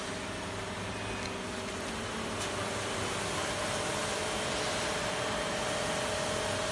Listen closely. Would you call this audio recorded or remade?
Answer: recorded